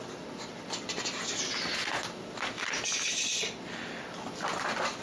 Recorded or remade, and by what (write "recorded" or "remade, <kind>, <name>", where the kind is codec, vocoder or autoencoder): recorded